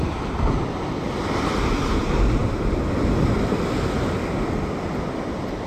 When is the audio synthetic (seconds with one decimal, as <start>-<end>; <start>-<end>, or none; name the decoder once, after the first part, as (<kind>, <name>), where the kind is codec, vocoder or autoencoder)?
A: none